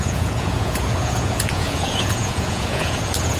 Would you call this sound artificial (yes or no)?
yes